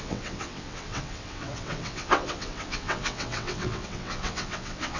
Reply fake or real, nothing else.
fake